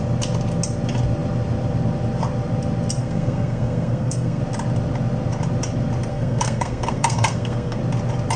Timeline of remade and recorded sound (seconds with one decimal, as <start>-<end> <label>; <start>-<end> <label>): 0.0-3.0 recorded; 3.0-4.4 remade; 4.4-6.1 recorded; 6.1-7.8 remade; 7.8-8.4 recorded